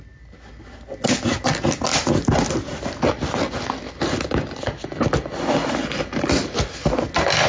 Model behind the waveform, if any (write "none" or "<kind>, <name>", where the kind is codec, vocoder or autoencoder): none